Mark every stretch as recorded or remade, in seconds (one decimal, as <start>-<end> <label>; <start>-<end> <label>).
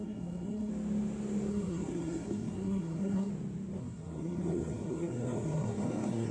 0.0-0.7 remade; 0.7-1.5 recorded; 1.5-3.3 remade; 3.3-3.8 recorded; 3.8-6.3 remade